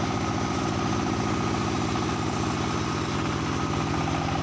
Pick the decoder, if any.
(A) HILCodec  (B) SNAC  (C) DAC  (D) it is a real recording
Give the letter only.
D